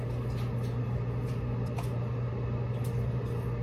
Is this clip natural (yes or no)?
yes